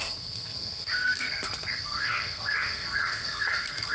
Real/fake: fake